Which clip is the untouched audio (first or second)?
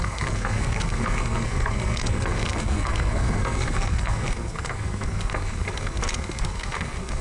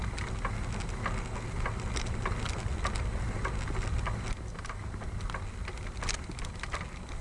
second